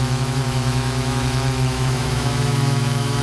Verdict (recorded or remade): remade